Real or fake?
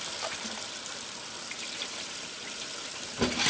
fake